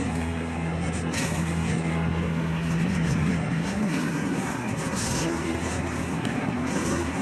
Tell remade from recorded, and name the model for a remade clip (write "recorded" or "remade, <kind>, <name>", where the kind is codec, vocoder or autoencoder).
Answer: remade, codec, SNAC